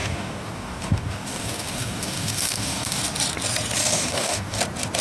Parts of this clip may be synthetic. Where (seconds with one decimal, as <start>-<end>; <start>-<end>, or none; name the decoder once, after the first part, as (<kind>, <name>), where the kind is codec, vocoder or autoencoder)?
0.0-3.0 (codec, DAC); 3.8-4.6